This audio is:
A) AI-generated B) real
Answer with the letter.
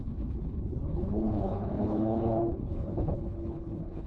A